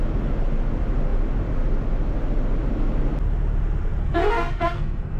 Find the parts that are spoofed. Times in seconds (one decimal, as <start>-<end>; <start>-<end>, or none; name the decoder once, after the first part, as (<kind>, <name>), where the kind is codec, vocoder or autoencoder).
4.0-5.2 (codec, SNAC)